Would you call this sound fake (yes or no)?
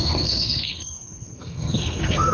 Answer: yes